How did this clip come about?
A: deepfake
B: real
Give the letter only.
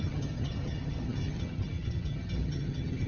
A